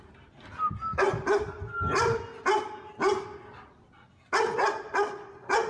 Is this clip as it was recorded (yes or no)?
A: yes